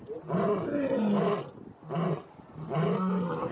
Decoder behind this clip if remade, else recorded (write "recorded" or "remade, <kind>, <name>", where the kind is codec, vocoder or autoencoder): recorded